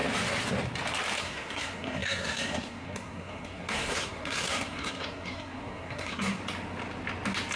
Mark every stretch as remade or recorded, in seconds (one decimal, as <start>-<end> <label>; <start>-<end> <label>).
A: 0.0-1.2 recorded; 1.2-6.4 remade; 6.4-7.6 recorded